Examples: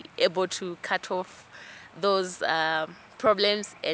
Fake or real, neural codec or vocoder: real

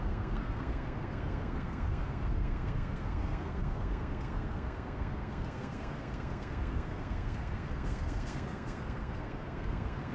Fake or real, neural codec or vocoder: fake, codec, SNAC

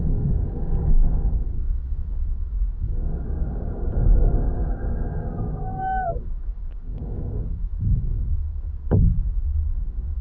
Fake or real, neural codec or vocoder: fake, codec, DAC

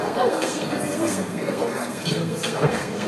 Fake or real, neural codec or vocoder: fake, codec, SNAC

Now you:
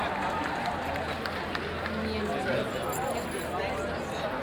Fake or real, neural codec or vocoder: real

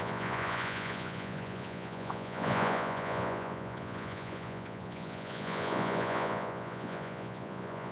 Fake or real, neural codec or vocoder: fake, vocoder, Vocos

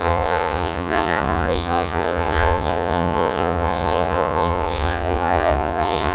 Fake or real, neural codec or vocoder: fake, vocoder, Vocos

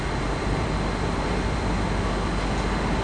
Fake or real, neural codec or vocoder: real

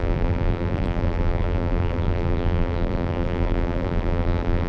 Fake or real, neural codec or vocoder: fake, vocoder, BigVGAN v2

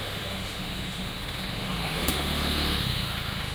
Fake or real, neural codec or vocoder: fake, autoencoder, DAC-VAE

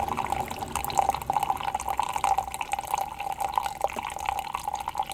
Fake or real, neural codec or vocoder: real